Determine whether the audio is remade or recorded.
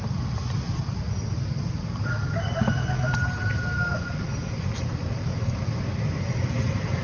recorded